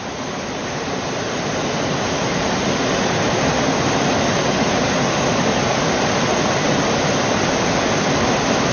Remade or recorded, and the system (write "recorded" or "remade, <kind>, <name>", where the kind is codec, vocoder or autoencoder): recorded